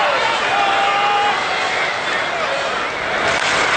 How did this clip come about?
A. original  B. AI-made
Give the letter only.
A